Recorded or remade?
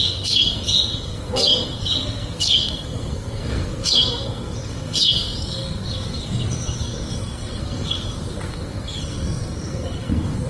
remade